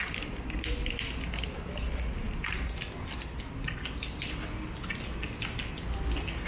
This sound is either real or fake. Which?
real